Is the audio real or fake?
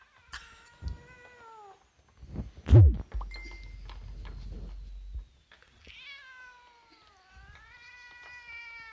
real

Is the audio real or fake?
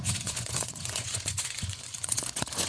fake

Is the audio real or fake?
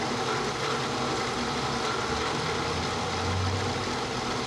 real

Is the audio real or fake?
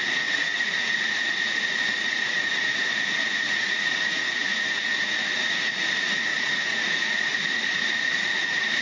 fake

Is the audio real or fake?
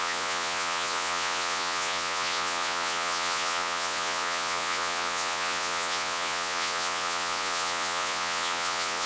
fake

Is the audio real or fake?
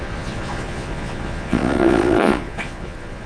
fake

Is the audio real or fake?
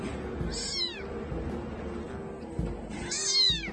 real